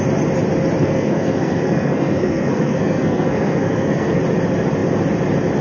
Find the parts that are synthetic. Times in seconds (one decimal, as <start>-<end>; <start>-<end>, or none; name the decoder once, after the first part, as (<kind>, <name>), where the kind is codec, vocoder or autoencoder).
0.8-4.2 (codec, SNAC)